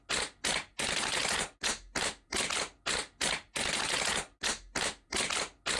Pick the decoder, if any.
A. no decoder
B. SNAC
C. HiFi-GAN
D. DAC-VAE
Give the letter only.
A